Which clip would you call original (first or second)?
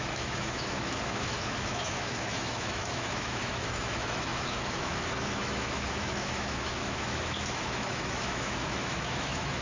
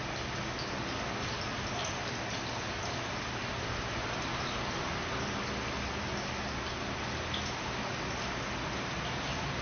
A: second